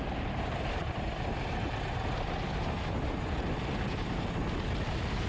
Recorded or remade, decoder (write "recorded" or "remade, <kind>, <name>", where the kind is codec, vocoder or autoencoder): recorded